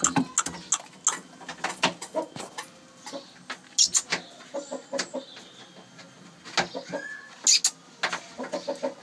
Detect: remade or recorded recorded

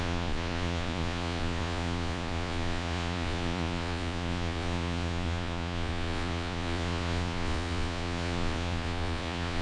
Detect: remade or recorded remade